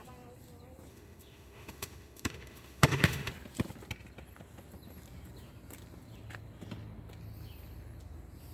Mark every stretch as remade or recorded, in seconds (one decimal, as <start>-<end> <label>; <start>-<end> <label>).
0.0-0.9 recorded; 0.9-3.3 remade; 3.3-8.5 recorded